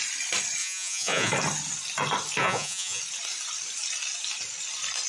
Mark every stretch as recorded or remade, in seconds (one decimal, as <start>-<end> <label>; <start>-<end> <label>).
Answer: 0.0-0.6 recorded; 0.6-1.3 remade; 1.3-2.4 recorded; 2.4-3.0 remade; 3.0-5.1 recorded